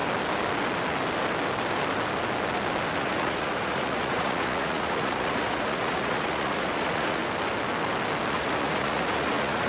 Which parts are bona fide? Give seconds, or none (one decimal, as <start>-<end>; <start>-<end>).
0.0-3.0; 7.2-8.3